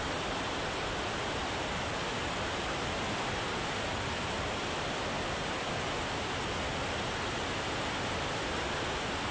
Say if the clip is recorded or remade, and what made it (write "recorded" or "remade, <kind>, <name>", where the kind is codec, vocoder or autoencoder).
remade, vocoder, BigVGAN v2